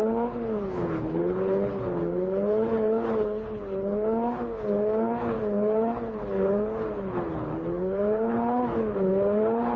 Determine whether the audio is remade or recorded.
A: remade